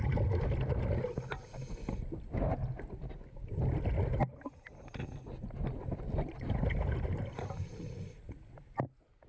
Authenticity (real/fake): real